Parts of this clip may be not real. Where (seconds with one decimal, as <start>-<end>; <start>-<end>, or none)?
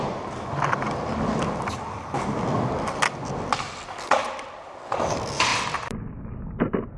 none